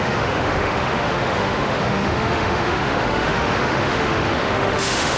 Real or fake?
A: fake